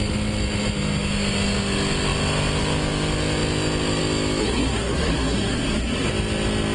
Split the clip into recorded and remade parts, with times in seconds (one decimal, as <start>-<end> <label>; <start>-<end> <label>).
0.0-4.4 recorded; 4.4-6.1 remade; 6.1-6.7 recorded